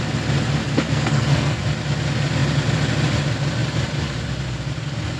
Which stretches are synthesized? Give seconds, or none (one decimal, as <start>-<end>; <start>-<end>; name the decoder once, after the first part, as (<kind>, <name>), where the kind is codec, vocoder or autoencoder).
0.6-1.6 (codec, SNAC)